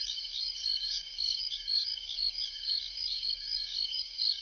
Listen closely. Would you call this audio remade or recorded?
remade